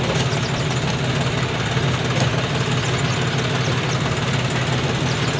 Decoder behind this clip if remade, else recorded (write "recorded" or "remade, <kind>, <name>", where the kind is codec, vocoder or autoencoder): recorded